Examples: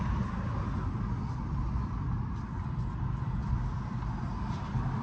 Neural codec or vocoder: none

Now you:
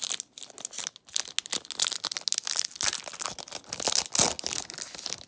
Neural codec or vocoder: none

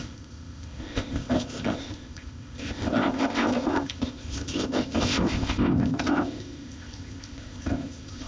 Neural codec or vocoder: codec, ZipCodec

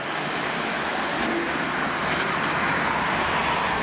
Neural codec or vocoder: none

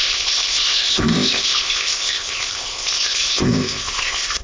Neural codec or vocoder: codec, ZipCodec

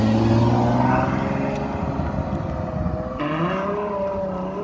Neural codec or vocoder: none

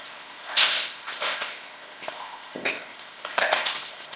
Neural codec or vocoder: codec, ZipCodec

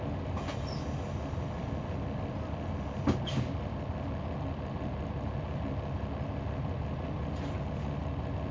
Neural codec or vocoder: none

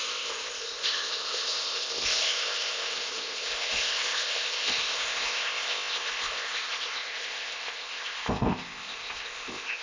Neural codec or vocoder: codec, ZipCodec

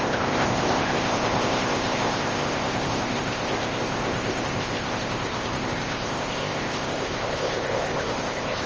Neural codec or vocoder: codec, ZipCodec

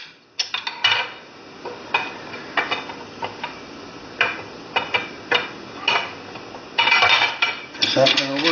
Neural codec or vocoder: none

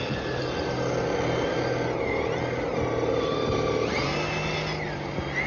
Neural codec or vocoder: none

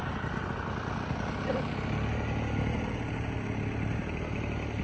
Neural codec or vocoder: none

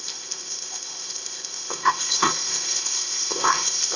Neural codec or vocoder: codec, ZipCodec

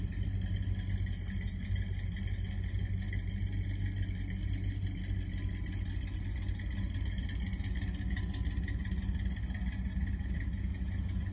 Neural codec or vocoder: none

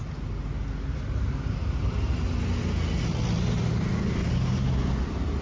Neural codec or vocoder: none